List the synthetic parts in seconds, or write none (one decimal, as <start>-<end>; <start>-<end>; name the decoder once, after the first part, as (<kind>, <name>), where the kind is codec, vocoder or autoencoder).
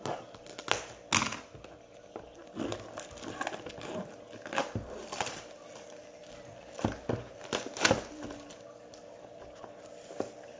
4.6-5.3 (vocoder, BigVGAN v2)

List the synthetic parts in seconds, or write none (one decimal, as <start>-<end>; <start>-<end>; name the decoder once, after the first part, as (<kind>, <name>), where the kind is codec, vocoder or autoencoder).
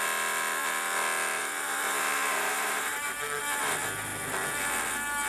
1.4-3.4 (vocoder, BigVGAN v2)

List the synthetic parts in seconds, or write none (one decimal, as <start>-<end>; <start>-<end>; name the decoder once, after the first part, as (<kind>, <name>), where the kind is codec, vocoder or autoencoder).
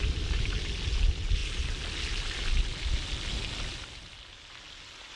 none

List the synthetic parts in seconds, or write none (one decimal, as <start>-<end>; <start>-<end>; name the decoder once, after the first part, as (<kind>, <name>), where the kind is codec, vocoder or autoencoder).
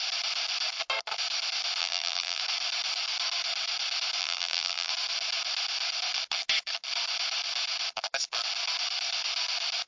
1.8-2.4 (vocoder, BigVGAN v2); 4.2-4.9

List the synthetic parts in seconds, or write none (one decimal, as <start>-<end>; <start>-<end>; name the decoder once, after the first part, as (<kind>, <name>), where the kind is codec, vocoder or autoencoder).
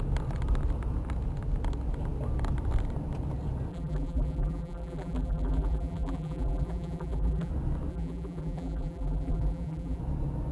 3.7-7.5 (vocoder, BigVGAN v2); 7.9-10.0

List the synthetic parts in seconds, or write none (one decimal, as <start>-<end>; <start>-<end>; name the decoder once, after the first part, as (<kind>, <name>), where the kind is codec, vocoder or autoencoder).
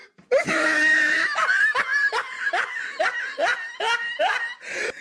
0.0-1.5 (vocoder, BigVGAN v2); 1.9-3.0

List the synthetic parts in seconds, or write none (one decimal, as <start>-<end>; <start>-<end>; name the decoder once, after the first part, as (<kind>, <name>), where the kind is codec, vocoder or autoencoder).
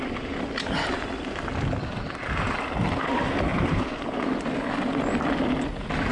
3.5-4.6 (vocoder, BigVGAN v2)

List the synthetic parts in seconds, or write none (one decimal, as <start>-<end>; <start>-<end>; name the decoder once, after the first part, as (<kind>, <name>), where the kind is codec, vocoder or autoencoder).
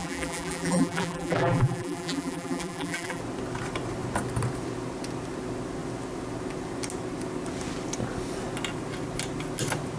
0.0-3.2 (vocoder, BigVGAN v2)